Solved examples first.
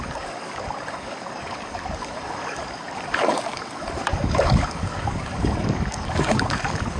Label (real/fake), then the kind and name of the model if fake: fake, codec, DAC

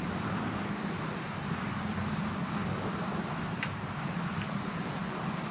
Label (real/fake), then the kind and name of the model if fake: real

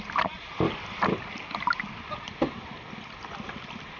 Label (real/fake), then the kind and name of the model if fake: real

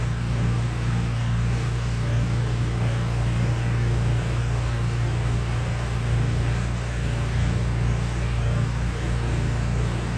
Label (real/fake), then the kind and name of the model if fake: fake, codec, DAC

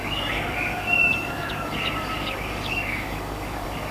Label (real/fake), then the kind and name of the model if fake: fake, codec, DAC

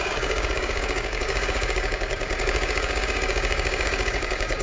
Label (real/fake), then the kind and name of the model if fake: fake, codec, DAC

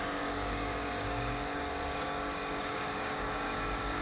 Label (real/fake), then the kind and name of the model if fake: fake, codec, DAC